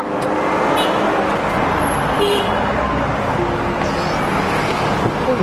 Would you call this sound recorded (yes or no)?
yes